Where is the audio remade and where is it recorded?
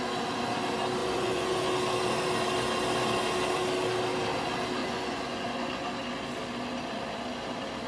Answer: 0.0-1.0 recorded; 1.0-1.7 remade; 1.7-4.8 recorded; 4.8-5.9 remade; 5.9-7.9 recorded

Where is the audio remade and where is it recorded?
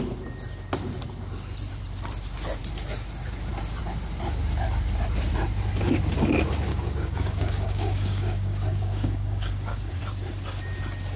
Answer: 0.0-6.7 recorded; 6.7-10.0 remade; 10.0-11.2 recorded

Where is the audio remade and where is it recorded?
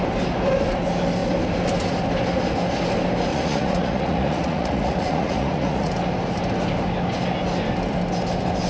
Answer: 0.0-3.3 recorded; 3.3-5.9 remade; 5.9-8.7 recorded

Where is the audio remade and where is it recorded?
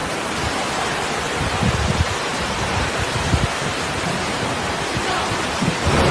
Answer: 0.0-0.8 remade; 0.8-2.3 recorded; 2.3-6.1 remade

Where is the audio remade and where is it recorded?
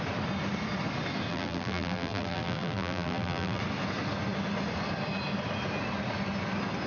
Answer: 0.0-1.3 recorded; 1.3-3.6 remade; 3.6-6.9 recorded